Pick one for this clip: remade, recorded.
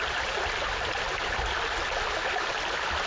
recorded